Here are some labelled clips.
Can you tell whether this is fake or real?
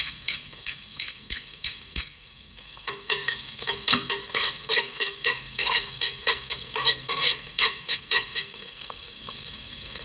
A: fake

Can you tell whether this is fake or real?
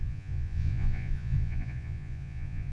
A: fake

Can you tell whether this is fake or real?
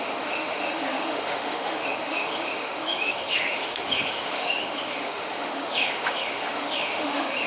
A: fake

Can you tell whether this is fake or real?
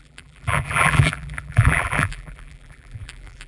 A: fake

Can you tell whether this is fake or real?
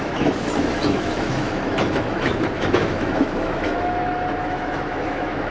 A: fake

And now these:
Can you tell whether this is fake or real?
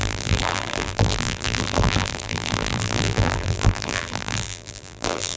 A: fake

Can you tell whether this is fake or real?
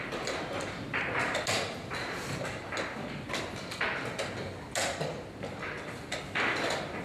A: real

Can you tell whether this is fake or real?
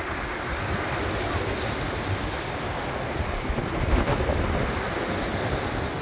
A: real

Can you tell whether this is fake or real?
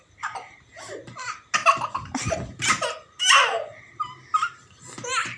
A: real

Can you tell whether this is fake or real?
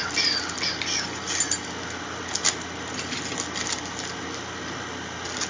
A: real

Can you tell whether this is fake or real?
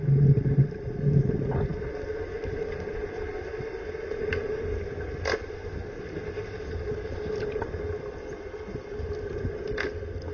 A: real